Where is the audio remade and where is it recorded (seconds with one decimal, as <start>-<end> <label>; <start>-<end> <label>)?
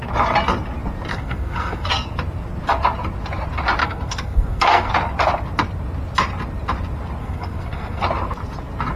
0.0-1.1 recorded; 1.1-1.9 remade; 1.9-3.8 recorded; 3.8-4.9 remade; 4.9-7.2 recorded; 7.2-8.0 remade; 8.0-9.0 recorded